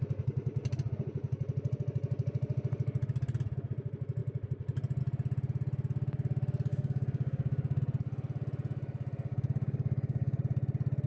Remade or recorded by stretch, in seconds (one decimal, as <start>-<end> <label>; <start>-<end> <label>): 0.0-6.7 recorded; 6.7-7.8 remade; 7.8-9.3 recorded; 9.3-10.4 remade; 10.4-11.1 recorded